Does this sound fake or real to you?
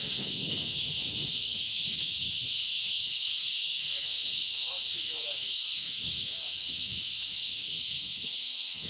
fake